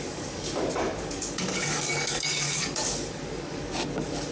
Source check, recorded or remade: remade